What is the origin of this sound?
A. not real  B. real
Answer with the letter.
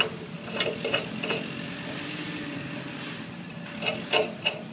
B